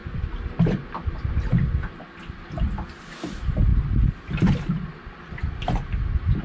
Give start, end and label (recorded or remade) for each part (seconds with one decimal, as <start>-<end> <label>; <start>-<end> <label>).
0.0-1.3 remade; 1.3-6.4 recorded